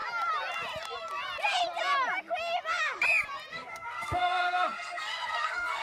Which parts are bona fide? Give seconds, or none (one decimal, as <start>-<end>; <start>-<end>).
0.0-3.5